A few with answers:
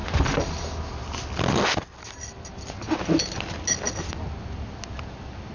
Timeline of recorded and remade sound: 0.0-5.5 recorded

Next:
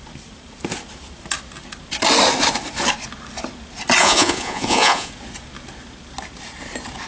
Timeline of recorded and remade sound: 0.0-4.0 recorded; 4.0-5.1 remade; 5.1-7.1 recorded